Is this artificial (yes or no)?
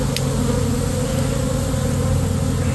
no